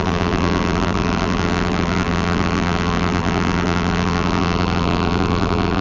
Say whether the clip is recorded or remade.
remade